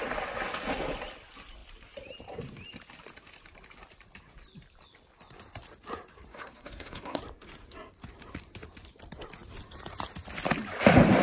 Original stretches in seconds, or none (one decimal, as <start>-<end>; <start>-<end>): 0.0-6.3; 7.2-11.2

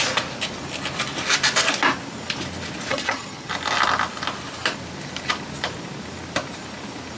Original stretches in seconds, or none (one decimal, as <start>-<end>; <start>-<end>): 0.0-2.9; 3.5-7.2

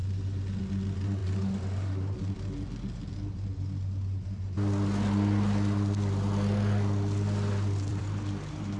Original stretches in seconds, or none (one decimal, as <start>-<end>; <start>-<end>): 0.0-7.9

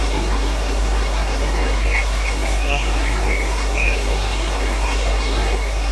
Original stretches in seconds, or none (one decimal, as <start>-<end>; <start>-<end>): none

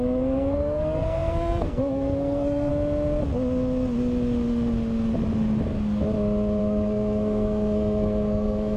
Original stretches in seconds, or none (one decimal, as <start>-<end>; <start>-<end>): 2.7-6.6